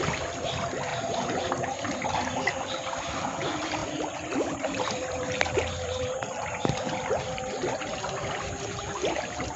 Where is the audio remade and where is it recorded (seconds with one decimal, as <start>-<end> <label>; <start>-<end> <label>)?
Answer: 0.0-9.6 recorded